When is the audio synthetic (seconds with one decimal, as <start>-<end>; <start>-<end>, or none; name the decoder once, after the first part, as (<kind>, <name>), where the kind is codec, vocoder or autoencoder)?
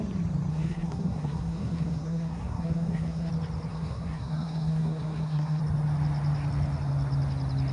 0.5-3.3 (codec, SNAC); 3.7-5.6